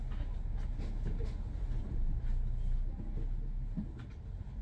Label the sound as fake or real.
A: real